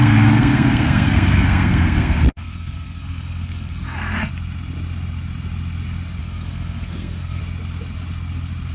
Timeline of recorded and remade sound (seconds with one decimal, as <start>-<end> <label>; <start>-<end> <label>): 0.0-4.3 remade; 4.3-6.2 recorded; 6.2-7.4 remade; 7.4-8.7 recorded